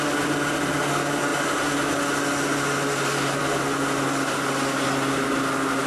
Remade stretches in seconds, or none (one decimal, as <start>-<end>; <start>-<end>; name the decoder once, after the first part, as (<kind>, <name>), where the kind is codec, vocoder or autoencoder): none